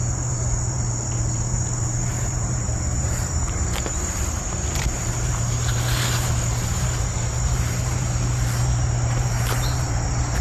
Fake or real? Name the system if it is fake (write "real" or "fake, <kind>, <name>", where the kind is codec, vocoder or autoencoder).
fake, vocoder, BigVGAN v2